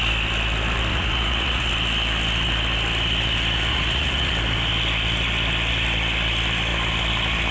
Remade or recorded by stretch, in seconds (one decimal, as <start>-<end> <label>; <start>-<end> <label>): 0.0-0.9 recorded; 0.9-1.7 remade; 1.7-3.7 recorded; 3.7-4.3 remade; 4.3-7.5 recorded